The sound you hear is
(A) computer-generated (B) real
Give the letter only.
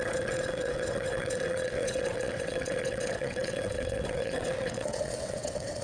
A